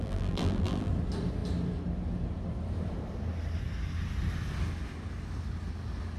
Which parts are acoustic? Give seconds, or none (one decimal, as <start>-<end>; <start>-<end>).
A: 0.9-6.2